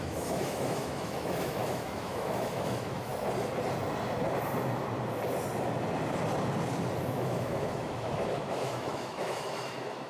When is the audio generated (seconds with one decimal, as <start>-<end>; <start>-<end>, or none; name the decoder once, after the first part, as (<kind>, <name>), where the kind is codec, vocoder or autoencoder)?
0.0-3.1 (autoencoder, DAC-VAE); 7.1-10.1

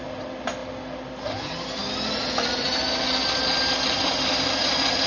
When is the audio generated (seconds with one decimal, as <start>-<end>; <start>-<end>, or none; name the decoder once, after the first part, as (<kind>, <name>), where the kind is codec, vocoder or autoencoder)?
none

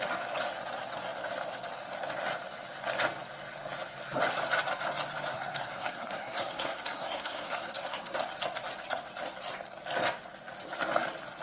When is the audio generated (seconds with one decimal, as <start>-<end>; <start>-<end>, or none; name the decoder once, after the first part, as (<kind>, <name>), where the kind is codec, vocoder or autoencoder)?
5.3-8.2 (codec, SNAC)

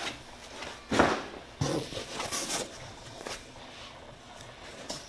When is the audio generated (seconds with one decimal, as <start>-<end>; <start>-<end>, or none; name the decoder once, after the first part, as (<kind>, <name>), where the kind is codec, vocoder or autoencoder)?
1.7-5.1 (vocoder, Vocos)